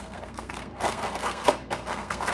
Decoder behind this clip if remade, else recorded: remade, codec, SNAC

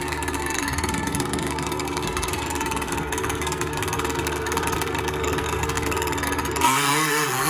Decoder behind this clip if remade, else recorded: remade, codec, SNAC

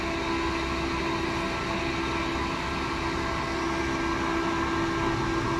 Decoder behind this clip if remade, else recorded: recorded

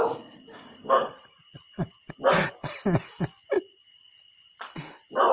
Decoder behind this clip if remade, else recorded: recorded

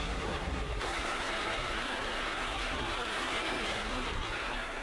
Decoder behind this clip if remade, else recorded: remade, codec, SNAC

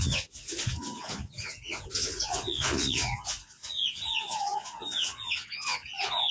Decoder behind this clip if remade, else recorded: remade, vocoder, Vocos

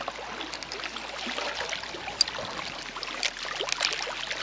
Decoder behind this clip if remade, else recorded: recorded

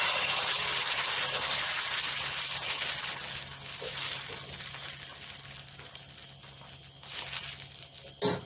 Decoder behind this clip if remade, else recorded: recorded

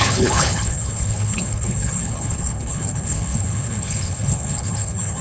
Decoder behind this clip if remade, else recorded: remade, codec, HILCodec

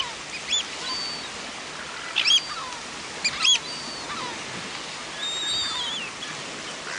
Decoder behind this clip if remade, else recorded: recorded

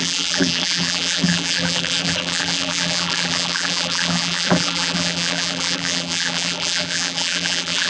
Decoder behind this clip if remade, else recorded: remade, vocoder, BigVGAN v2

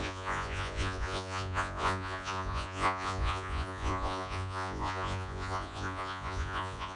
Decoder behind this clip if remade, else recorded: remade, vocoder, Vocos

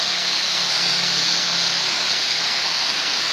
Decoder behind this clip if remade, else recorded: remade, codec, SNAC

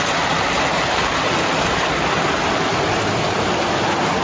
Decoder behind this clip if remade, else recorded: recorded